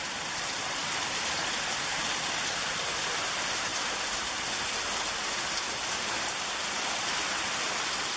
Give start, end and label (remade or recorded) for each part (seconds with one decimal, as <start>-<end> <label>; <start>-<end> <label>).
0.0-8.2 recorded